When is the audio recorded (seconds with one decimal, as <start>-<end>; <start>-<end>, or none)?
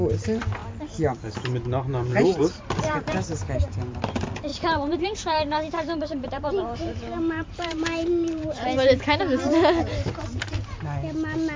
0.0-2.1; 4.0-4.5; 9.0-11.6